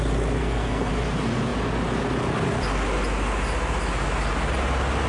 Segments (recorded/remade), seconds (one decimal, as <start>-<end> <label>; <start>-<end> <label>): 0.0-0.4 recorded; 0.4-0.9 remade; 0.9-5.1 recorded